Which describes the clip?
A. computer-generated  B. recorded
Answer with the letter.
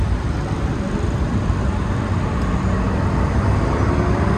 B